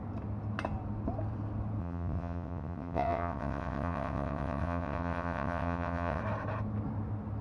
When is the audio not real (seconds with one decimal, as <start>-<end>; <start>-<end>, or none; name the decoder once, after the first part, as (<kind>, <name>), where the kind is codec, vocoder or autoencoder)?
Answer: 1.8-6.2 (vocoder, WaveNeXt)